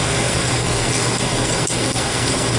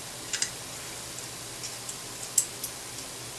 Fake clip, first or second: first